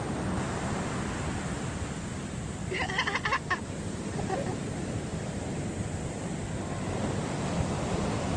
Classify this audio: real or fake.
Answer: real